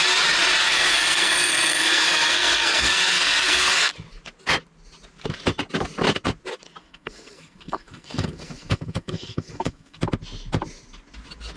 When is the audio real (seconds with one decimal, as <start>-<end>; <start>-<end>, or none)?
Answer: 0.0-0.6; 3.9-6.8; 10.0-11.6